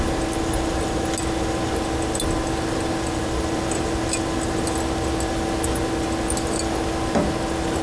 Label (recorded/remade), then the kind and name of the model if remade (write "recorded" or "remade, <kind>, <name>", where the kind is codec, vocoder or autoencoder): recorded